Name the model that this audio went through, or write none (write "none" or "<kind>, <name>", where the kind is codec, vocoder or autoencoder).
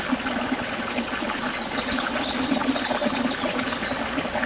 none